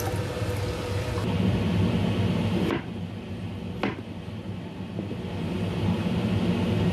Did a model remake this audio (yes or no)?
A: no